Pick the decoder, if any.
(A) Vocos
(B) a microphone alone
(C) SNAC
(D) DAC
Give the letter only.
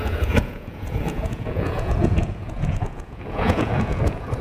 A